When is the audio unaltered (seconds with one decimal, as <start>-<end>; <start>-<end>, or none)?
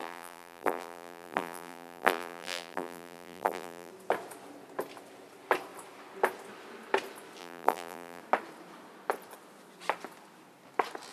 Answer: 3.9-7.4; 8.2-11.1